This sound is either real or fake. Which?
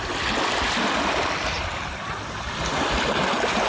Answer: real